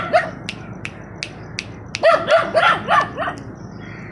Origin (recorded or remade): recorded